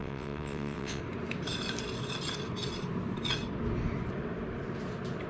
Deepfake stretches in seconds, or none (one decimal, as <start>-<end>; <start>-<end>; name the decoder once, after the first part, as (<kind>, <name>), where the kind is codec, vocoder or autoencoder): 0.0-1.0 (vocoder, WaveNeXt)